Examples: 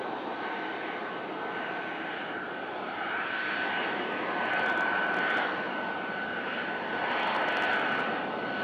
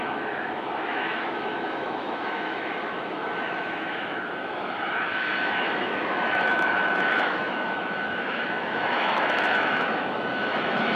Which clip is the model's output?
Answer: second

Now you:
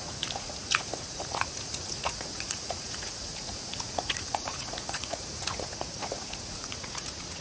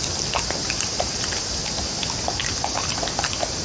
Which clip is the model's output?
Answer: first